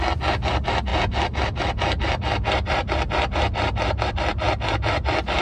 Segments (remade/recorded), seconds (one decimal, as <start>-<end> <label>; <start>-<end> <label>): 0.0-5.4 recorded